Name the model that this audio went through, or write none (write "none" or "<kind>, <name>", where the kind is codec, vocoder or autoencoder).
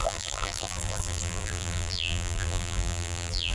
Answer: vocoder, BigVGAN v2